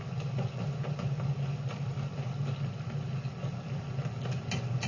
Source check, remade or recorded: recorded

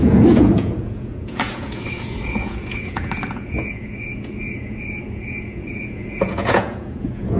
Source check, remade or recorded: remade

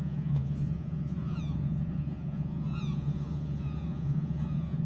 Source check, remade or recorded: remade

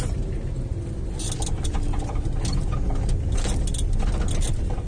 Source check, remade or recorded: recorded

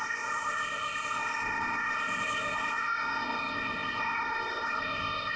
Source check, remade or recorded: remade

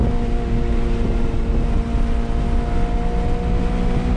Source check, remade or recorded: recorded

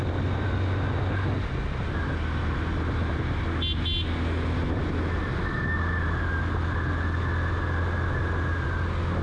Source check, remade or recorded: recorded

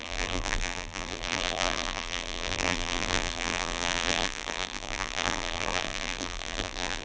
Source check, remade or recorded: remade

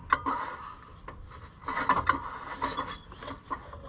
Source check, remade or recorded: recorded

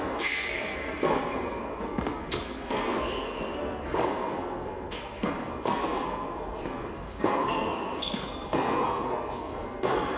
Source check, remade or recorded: remade